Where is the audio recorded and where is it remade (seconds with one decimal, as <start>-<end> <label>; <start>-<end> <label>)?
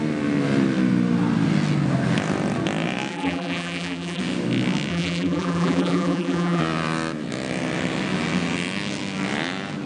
0.0-3.1 recorded; 3.1-4.2 remade; 4.2-4.9 recorded; 4.9-6.6 remade; 6.6-9.9 recorded